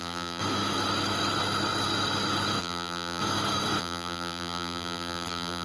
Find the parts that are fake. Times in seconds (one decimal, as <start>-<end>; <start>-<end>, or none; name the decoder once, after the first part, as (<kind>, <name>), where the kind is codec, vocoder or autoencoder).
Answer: 0.0-0.4 (vocoder, BigVGAN v2); 2.6-3.2; 3.8-5.6